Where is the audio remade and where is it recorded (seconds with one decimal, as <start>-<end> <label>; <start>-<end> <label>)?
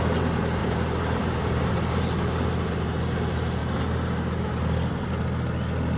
0.0-0.6 recorded; 0.6-1.7 remade; 1.7-6.0 recorded